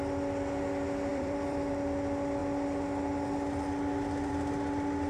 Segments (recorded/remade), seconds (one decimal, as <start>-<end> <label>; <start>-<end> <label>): 0.0-1.1 recorded; 1.1-1.7 remade; 1.7-5.1 recorded